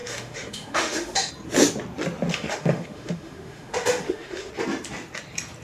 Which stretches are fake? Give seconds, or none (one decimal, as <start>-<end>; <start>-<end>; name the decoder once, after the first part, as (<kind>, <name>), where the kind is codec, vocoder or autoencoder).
0.0-1.3 (autoencoder, DAC-VAE); 2.3-4.5